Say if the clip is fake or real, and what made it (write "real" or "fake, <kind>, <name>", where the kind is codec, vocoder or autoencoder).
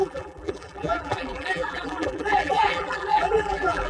fake, vocoder, BigVGAN v2